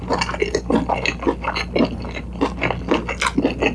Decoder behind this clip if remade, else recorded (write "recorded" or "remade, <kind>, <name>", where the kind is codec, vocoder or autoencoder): recorded